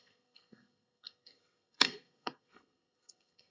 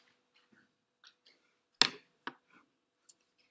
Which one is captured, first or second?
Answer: second